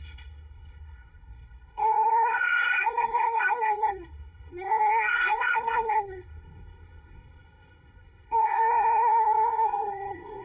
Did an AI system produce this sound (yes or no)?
yes